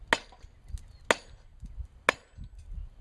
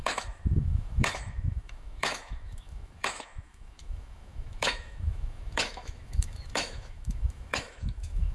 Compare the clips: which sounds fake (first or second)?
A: second